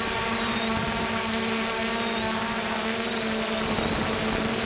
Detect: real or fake real